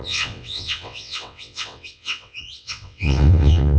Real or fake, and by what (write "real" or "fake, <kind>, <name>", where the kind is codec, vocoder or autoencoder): fake, vocoder, WaveNeXt